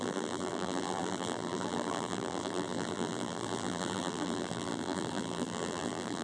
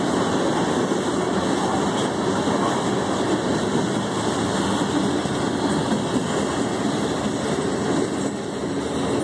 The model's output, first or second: first